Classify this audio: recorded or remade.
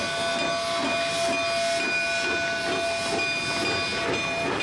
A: recorded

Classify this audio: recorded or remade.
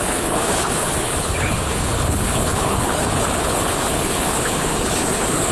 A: remade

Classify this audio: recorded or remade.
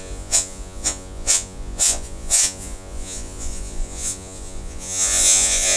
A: remade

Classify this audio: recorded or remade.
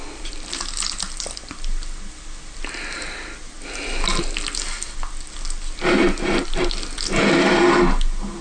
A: recorded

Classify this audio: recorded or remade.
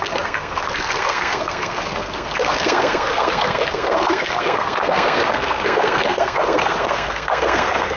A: remade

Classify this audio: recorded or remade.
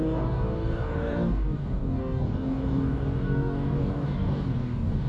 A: remade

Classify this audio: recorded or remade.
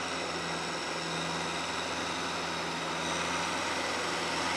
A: recorded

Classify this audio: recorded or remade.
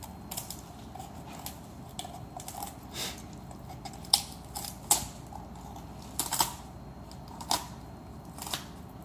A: recorded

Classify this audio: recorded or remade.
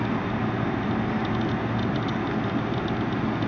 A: recorded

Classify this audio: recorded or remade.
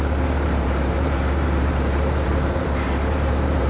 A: remade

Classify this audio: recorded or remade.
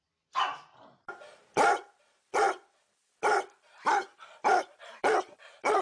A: recorded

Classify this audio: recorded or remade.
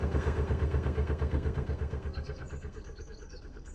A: remade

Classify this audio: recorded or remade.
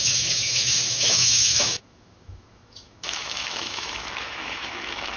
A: remade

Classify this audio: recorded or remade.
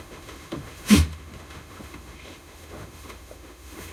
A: remade